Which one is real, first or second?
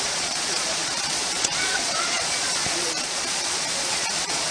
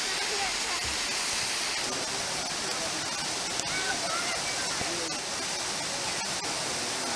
second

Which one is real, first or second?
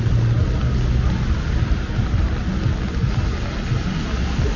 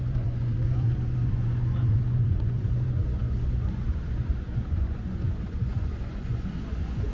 first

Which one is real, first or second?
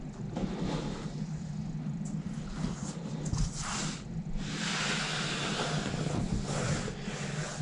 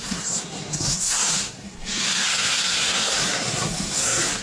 first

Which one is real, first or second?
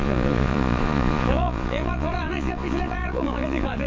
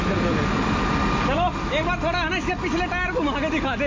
second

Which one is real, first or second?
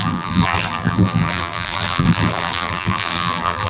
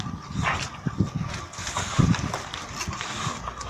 second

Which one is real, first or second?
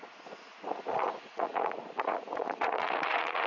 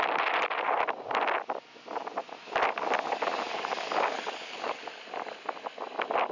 second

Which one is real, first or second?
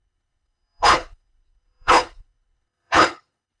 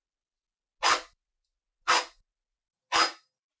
second